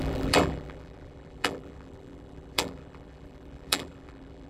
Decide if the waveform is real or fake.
fake